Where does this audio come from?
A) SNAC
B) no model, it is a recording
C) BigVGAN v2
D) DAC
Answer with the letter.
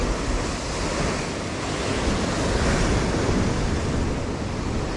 B